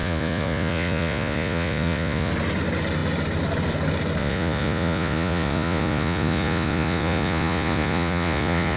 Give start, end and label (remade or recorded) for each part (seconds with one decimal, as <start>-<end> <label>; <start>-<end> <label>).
0.0-2.3 remade; 2.3-4.2 recorded; 4.2-8.8 remade